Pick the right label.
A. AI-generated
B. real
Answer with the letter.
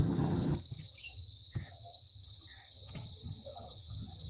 A